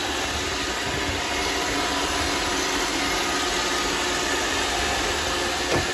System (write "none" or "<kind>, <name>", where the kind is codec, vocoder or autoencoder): none